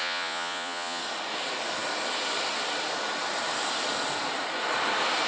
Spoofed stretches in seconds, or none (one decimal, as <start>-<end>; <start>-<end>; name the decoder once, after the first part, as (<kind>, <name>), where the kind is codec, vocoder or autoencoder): 0.0-1.0 (vocoder, Vocos)

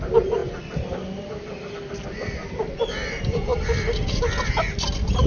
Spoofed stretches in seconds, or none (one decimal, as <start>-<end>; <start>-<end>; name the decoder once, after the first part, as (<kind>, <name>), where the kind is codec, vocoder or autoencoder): none

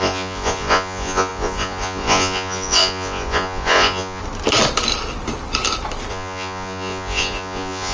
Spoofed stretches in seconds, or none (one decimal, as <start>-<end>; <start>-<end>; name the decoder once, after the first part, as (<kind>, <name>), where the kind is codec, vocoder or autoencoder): 0.0-4.2 (vocoder, Vocos); 6.1-7.9

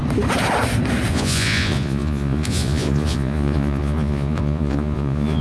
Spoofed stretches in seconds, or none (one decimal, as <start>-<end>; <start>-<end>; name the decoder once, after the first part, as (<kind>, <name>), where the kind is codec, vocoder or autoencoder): 1.1-5.4 (vocoder, Vocos)

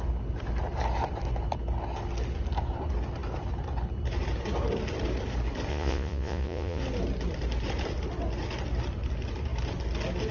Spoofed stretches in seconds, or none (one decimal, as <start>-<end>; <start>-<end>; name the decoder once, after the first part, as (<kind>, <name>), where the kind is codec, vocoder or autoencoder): 5.7-6.8 (vocoder, Vocos)

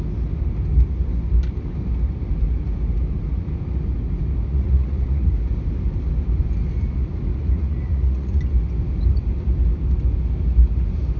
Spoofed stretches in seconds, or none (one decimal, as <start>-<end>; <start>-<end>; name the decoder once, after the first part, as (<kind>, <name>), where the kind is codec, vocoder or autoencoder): 4.5-5.3 (vocoder, Vocos); 7.3-8.4